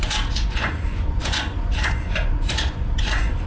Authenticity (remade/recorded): remade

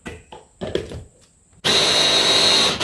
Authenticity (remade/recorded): recorded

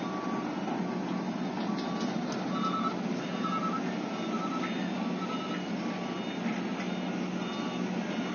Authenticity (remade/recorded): recorded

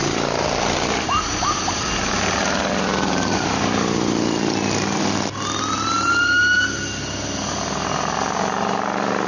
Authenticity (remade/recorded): recorded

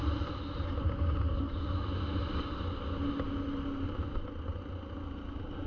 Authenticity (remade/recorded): recorded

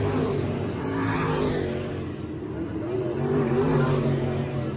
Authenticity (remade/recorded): recorded